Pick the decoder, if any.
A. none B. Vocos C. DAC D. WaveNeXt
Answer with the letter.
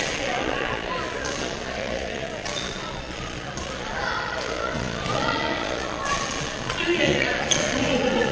B